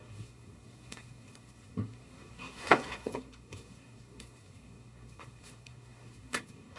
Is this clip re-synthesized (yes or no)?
yes